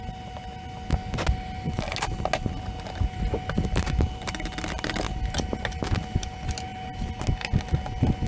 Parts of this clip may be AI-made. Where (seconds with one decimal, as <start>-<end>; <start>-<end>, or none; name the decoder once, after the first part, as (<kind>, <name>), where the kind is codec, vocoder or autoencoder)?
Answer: none